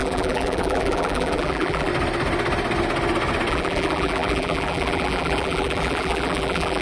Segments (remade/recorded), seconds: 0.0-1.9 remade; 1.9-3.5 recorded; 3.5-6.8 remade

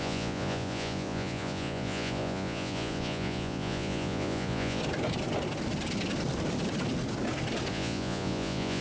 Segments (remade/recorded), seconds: 0.0-4.8 remade; 4.8-7.7 recorded; 7.7-8.8 remade

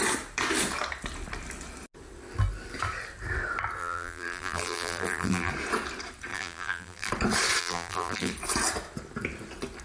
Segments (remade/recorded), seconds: 0.0-3.8 recorded; 3.8-5.5 remade; 5.5-6.3 recorded; 6.3-7.1 remade; 7.1-7.6 recorded; 7.6-8.3 remade; 8.3-9.8 recorded